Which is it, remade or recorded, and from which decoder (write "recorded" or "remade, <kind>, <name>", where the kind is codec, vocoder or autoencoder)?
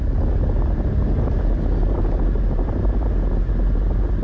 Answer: recorded